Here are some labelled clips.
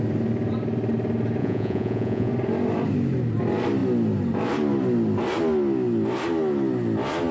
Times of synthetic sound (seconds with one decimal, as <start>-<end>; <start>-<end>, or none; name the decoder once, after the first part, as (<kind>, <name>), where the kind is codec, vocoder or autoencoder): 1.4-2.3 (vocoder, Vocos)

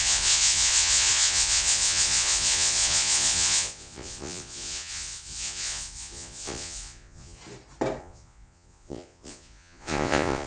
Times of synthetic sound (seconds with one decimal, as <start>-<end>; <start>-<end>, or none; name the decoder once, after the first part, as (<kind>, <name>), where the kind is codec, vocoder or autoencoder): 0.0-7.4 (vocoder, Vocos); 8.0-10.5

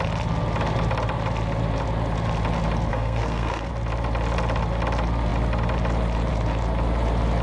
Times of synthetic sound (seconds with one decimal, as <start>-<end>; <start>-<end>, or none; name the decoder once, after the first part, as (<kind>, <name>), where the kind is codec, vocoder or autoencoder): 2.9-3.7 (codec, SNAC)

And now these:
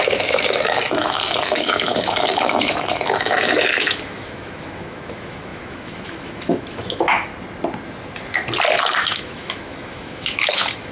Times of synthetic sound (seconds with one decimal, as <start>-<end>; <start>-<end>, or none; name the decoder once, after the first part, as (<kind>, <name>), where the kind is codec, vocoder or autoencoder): 0.0-7.3 (autoencoder, DAC-VAE); 8.8-10.9

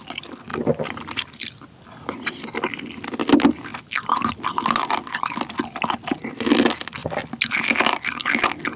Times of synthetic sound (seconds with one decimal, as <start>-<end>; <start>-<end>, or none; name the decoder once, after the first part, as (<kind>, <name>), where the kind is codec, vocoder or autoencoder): none

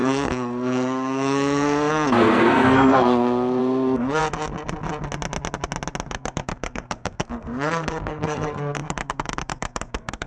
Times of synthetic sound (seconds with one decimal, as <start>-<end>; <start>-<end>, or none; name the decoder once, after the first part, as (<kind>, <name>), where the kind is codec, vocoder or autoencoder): 0.0-4.2 (codec, SNAC); 6.1-10.3

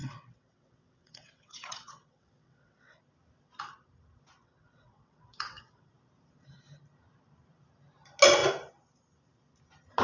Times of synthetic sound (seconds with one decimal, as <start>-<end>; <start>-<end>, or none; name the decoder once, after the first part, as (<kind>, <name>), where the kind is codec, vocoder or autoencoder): 0.0-3.0 (vocoder, WaveNeXt); 4.4-5.9

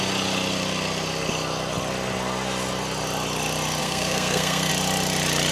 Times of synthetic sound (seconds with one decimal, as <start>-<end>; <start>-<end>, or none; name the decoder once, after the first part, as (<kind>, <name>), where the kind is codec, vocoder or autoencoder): 3.8-4.7 (codec, SNAC)